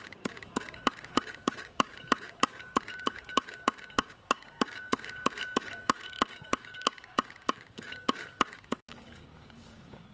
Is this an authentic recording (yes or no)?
no